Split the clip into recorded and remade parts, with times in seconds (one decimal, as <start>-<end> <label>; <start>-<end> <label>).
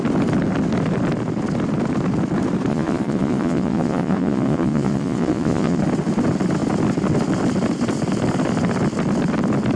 0.0-2.7 recorded; 2.7-5.8 remade; 5.8-9.8 recorded